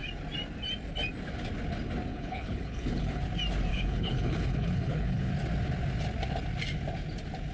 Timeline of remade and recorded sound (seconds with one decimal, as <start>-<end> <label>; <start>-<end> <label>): 0.0-2.1 recorded; 2.1-3.2 remade; 3.2-3.7 recorded; 3.7-5.3 remade; 5.3-7.5 recorded